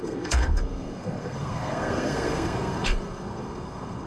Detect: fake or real fake